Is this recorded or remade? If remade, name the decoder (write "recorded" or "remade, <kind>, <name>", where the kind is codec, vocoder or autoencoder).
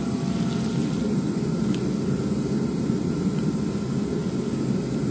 recorded